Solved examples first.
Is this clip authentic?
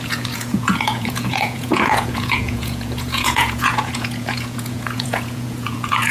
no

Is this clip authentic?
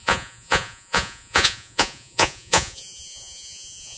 no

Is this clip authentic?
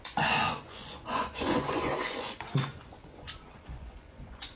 no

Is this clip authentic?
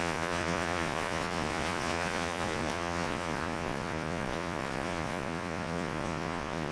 no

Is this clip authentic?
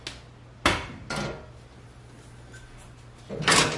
yes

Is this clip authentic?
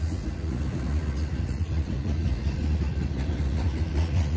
no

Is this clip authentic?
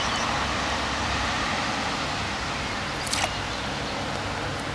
yes